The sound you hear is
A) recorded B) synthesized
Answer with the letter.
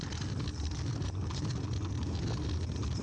A